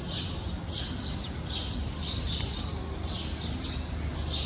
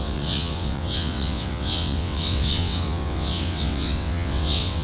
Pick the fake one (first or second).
second